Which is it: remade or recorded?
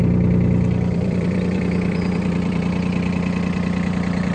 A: remade